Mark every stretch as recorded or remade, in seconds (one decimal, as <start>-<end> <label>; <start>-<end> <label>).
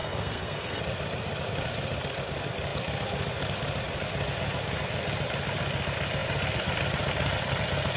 0.0-0.8 remade; 0.8-8.0 recorded